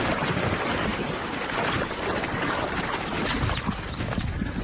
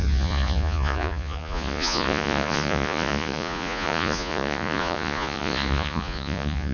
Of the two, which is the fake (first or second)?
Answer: second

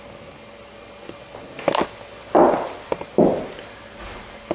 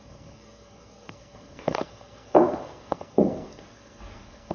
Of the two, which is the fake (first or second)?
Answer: second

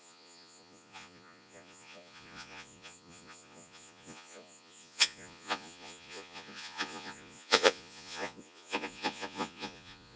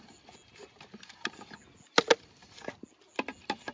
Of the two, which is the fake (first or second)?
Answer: first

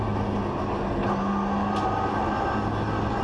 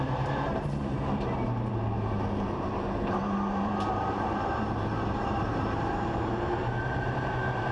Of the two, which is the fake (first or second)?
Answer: second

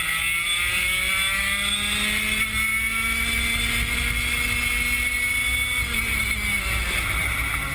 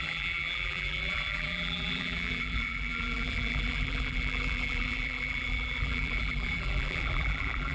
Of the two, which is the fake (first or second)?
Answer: second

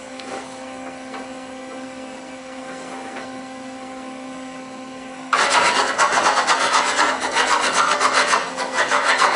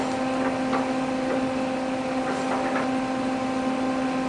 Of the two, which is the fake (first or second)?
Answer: first